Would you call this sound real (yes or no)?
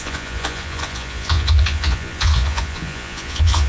no